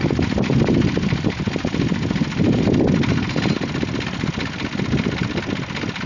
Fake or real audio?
real